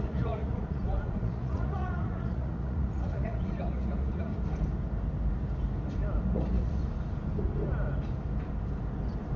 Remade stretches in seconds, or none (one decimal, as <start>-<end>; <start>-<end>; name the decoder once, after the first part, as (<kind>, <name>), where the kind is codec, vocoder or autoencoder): 0.0-4.3 (vocoder, Vocos); 6.2-6.8